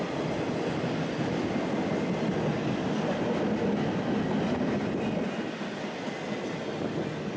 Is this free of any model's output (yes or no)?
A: yes